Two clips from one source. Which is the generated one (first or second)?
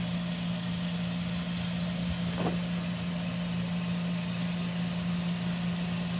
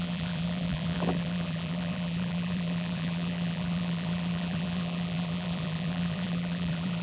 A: second